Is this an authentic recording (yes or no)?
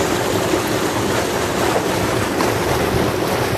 yes